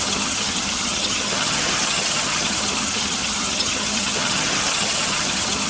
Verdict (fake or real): fake